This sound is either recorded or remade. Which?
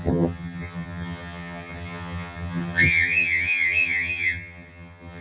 remade